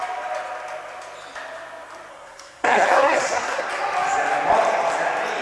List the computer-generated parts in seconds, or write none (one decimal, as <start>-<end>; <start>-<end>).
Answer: 2.1-3.7